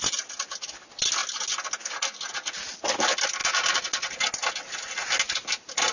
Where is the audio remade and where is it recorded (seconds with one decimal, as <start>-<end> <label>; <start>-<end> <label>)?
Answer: 0.0-5.9 recorded